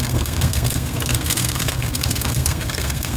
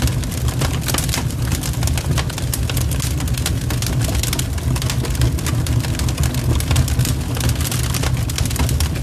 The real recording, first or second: second